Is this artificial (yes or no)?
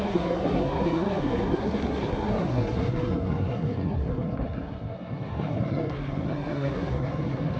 yes